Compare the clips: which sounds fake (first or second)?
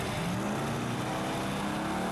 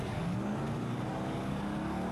second